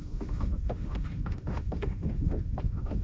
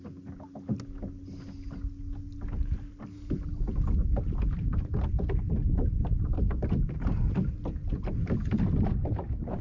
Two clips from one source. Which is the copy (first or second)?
first